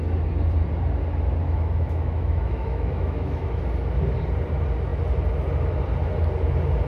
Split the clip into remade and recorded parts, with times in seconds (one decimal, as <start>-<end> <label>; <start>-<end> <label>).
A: 0.0-1.4 recorded; 1.4-3.6 remade; 3.6-6.9 recorded